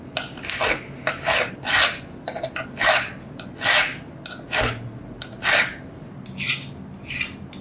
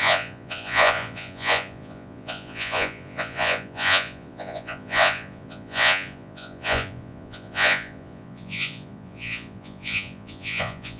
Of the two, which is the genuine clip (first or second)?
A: first